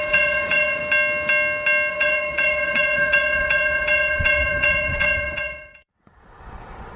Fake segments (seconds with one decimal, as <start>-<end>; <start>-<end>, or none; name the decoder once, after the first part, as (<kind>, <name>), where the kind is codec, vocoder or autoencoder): 0.0-0.8 (vocoder, Vocos); 1.9-7.0